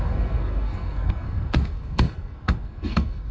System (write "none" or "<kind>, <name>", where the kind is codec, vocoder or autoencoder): codec, SNAC